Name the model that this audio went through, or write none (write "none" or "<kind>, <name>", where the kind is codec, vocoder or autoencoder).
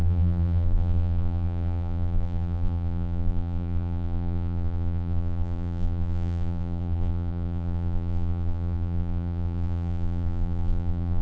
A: vocoder, BigVGAN v2